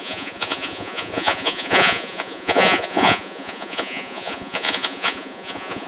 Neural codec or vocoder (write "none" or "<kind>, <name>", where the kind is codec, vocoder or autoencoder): vocoder, Vocos